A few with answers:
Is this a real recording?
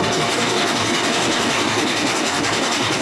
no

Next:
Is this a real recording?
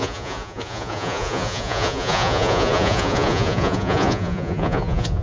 no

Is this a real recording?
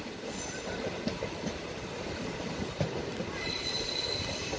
yes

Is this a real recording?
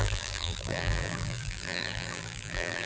no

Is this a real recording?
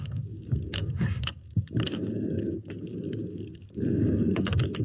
no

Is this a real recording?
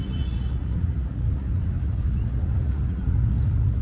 no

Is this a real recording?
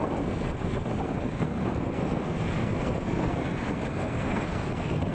no